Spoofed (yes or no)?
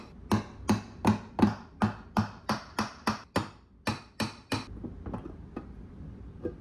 no